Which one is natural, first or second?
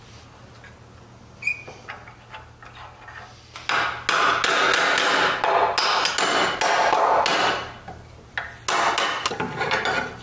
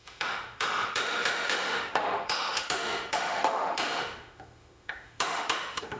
first